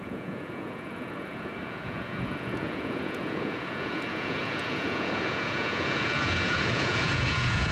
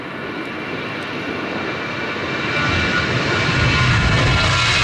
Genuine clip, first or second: second